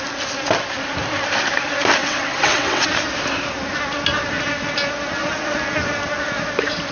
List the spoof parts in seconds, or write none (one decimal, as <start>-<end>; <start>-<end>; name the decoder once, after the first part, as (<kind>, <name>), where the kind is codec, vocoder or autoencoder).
2.0-2.9 (vocoder, WaveNeXt)